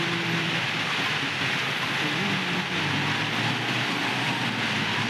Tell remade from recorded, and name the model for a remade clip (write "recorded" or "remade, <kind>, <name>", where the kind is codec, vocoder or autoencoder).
recorded